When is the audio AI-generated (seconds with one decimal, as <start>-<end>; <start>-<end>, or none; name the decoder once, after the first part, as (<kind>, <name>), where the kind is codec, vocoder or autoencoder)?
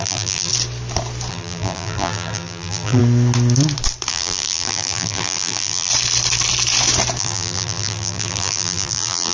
0.0-0.5 (vocoder, BigVGAN v2); 1.3-3.0; 4.1-5.9; 7.2-9.3